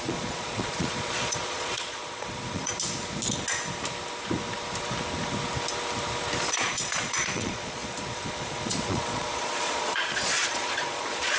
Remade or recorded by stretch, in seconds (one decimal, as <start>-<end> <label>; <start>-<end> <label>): 0.0-2.7 remade; 2.7-6.4 recorded; 6.4-11.4 remade